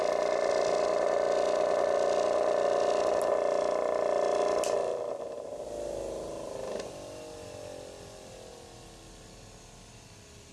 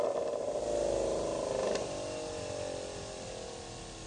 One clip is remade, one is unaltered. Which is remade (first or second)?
second